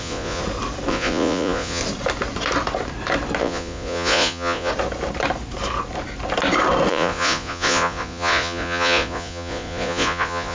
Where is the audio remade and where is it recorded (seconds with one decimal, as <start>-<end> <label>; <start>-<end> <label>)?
0.0-0.4 remade; 0.4-0.9 recorded; 0.9-1.8 remade; 1.8-3.4 recorded; 3.4-4.7 remade; 4.7-6.9 recorded; 6.9-10.5 remade